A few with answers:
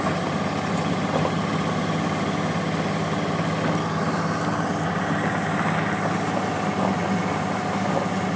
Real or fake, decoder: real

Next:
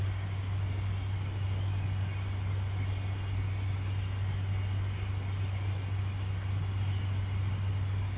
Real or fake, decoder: real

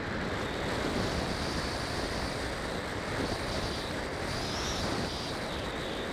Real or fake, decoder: real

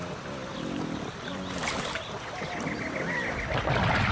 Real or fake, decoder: real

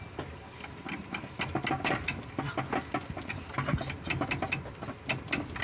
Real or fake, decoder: real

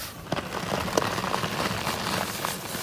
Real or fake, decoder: real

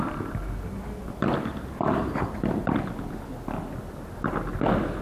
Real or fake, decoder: real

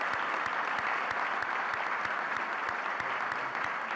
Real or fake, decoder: real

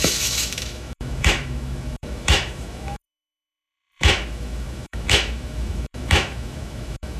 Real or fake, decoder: fake, autoencoder, DAC-VAE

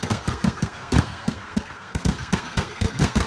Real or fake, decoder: fake, codec, SNAC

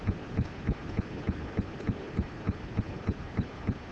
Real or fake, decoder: real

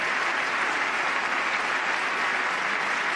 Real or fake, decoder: real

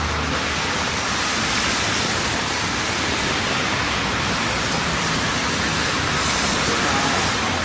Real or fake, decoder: real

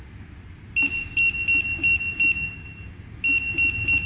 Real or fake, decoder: real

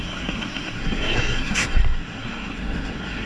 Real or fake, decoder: fake, codec, SNAC